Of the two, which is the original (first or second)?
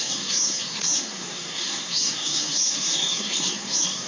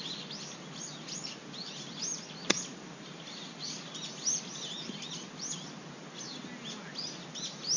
second